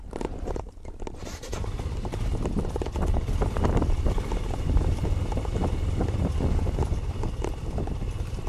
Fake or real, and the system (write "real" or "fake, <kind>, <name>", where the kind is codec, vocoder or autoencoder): real